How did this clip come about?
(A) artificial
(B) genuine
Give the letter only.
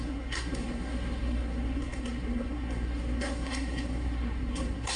A